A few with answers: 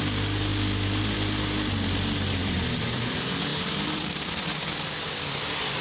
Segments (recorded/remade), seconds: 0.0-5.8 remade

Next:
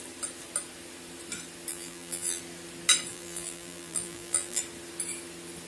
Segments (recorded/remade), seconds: 0.0-1.7 recorded; 1.7-2.4 remade; 2.4-3.1 recorded; 3.1-4.6 remade; 4.6-5.7 recorded

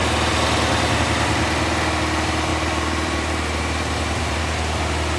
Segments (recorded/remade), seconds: 0.0-2.5 recorded; 2.5-4.4 remade; 4.4-5.2 recorded